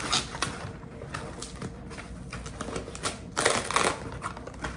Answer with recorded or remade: recorded